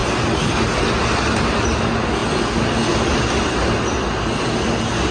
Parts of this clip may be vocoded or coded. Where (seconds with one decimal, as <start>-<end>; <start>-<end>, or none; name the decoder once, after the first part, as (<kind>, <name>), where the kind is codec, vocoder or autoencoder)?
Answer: none